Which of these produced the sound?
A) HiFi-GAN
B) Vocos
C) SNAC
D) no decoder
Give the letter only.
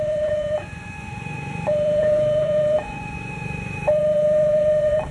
B